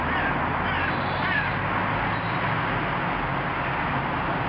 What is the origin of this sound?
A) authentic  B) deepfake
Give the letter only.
A